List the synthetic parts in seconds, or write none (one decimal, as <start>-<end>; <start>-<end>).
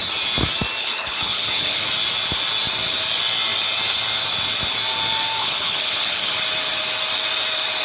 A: 0.8-1.8; 5.4-6.3